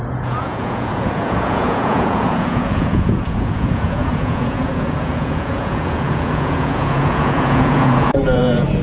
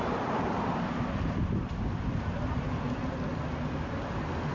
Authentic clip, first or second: second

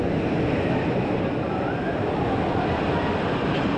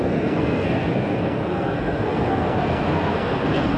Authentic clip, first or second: first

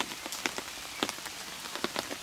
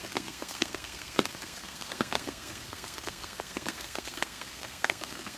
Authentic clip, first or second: first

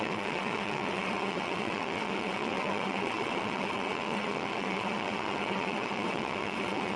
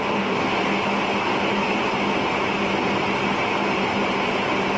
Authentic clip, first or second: second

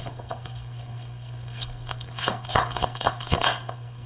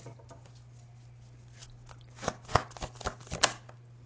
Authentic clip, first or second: second